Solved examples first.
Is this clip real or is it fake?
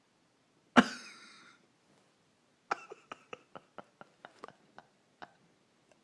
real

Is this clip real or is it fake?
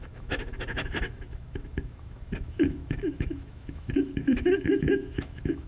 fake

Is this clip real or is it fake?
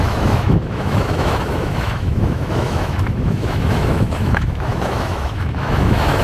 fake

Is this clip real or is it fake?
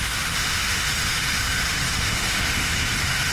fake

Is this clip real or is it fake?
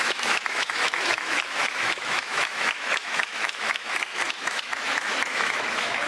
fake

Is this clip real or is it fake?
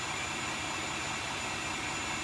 real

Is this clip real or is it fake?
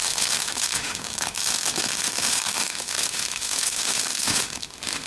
fake